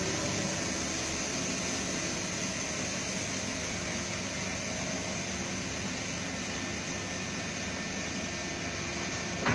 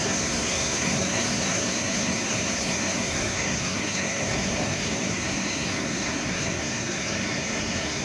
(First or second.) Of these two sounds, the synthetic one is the second